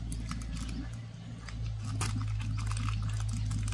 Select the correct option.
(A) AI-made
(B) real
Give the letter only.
B